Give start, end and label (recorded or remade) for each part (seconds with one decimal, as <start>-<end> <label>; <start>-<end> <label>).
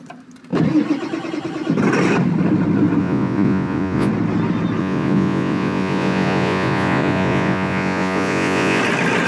0.0-3.0 recorded; 3.0-4.1 remade; 4.1-4.8 recorded; 4.8-8.8 remade; 8.8-9.3 recorded